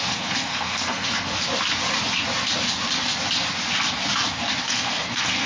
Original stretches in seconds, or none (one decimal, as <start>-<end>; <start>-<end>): 1.3-4.6